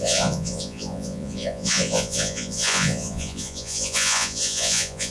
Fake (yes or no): yes